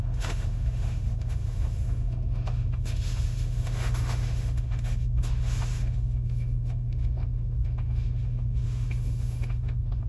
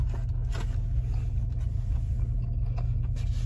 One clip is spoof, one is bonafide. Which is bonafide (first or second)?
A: second